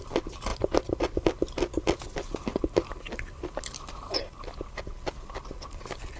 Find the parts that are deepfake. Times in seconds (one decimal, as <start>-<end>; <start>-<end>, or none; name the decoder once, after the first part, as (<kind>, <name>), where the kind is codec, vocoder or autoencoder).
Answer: none